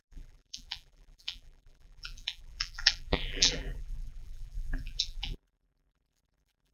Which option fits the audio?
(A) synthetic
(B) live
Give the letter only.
A